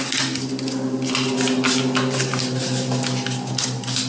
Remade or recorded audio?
recorded